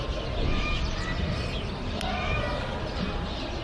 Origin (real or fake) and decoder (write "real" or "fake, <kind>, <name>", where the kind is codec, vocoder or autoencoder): real